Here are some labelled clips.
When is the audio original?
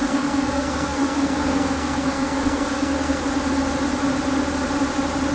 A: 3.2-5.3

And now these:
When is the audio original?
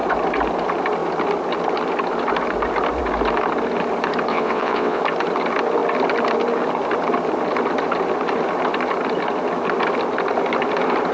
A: 0.0-4.3; 5.0-11.1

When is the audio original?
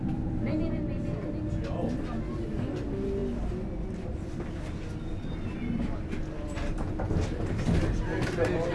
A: 0.0-8.7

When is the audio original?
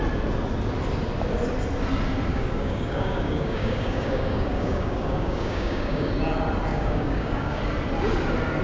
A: 0.0-2.3; 6.1-6.7; 7.6-8.6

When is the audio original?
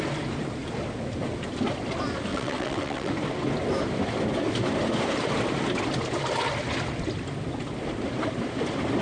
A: 0.0-2.3; 3.1-9.0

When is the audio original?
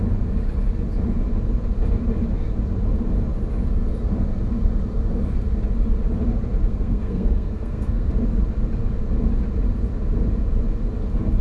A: 0.0-6.7; 8.1-11.4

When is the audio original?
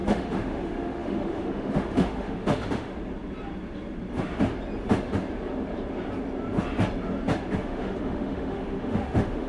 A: 2.9-7.6